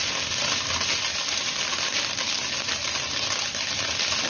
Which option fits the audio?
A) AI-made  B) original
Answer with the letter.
B